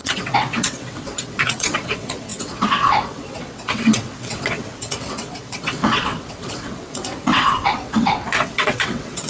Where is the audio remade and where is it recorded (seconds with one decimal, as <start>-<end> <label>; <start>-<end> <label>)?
0.0-9.3 remade